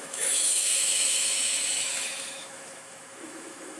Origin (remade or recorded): remade